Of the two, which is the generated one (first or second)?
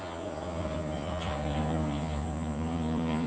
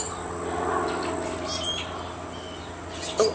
first